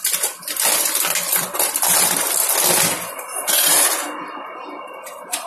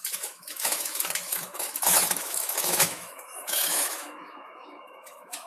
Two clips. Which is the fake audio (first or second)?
second